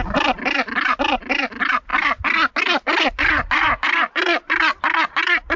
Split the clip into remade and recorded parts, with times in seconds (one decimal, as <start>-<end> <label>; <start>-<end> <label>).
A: 0.0-5.6 recorded